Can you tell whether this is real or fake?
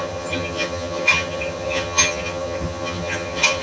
fake